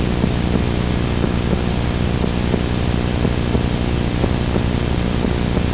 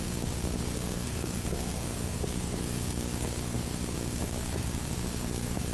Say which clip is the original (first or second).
first